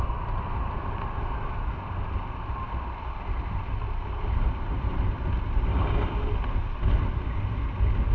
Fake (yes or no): no